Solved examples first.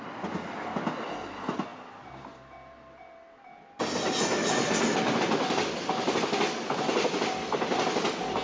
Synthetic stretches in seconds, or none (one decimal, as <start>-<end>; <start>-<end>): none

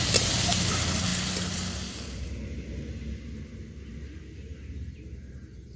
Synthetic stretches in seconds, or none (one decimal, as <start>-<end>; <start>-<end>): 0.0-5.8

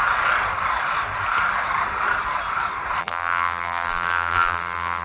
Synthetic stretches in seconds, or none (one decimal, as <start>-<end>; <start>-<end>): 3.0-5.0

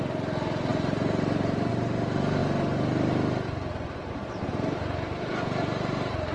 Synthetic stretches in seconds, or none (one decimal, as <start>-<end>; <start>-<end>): 0.0-2.4; 4.1-6.3

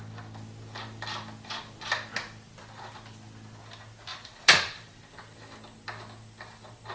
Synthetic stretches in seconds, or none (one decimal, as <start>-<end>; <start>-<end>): 4.1-5.0

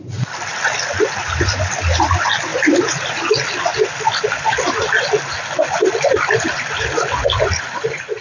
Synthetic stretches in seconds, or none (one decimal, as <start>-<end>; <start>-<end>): none

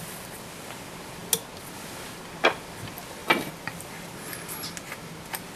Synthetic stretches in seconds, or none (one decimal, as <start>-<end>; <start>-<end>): 3.2-3.9